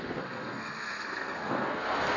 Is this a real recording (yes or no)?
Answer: no